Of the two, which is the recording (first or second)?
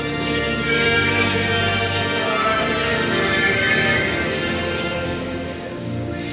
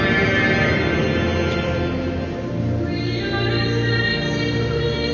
second